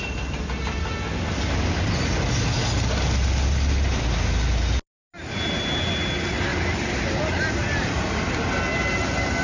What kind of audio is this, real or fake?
real